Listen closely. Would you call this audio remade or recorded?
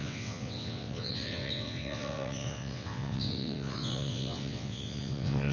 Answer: remade